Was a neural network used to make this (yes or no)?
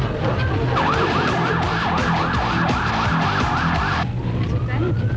no